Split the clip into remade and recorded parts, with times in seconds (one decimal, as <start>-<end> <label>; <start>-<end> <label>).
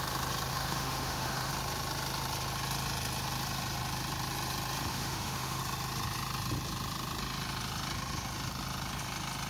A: 0.0-0.5 recorded; 0.5-1.5 remade; 1.5-4.9 recorded; 4.9-5.6 remade; 5.6-9.5 recorded